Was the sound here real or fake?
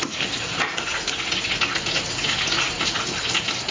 real